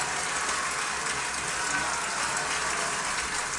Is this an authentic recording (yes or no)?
yes